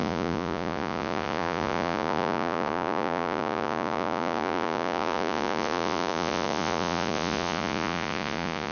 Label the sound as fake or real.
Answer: fake